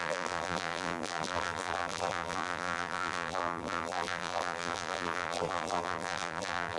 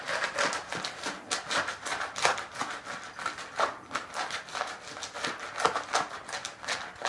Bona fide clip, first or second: second